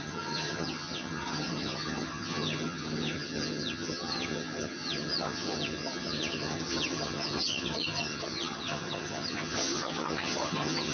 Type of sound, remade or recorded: remade